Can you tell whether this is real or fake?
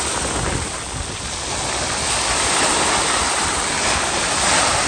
real